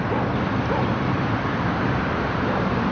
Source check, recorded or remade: recorded